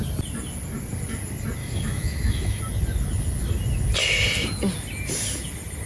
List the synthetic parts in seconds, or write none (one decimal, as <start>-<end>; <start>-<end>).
1.6-2.6